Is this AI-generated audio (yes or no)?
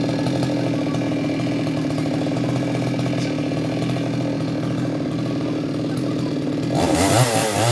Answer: no